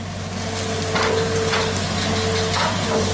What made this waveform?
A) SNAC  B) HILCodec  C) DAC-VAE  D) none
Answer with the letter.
D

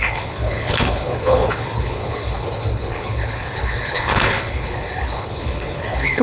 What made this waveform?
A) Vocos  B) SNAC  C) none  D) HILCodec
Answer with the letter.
D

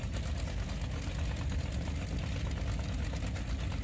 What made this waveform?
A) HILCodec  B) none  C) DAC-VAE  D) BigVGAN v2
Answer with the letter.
B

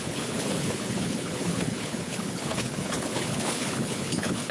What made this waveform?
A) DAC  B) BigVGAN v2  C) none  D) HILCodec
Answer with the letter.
D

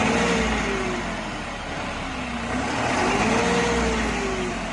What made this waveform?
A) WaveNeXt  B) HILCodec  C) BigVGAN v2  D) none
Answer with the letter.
D